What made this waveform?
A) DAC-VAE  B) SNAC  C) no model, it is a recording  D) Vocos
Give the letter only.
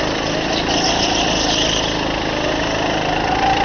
C